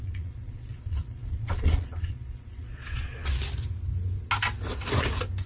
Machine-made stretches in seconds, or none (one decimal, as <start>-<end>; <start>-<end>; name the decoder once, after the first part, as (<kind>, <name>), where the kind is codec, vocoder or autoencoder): 0.0-3.3 (vocoder, Vocos)